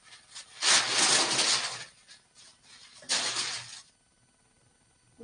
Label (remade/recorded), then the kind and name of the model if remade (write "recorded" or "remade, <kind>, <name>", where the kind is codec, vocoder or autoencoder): recorded